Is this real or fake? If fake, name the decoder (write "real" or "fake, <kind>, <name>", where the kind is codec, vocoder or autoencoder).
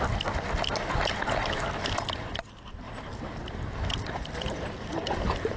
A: real